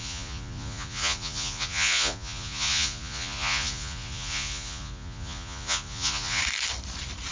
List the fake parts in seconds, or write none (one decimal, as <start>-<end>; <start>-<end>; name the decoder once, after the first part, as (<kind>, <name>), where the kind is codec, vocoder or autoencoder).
0.0-6.4 (vocoder, Vocos)